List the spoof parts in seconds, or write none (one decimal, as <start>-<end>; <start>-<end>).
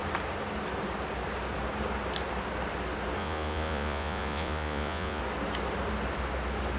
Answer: 3.2-5.2